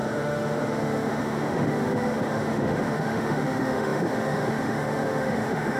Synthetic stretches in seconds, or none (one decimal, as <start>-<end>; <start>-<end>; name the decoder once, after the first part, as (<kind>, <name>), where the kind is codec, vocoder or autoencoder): 0.0-5.8 (autoencoder, DAC-VAE)